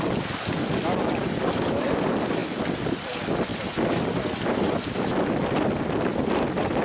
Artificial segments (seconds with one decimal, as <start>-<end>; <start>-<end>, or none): none